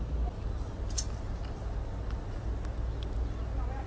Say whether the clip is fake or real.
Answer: real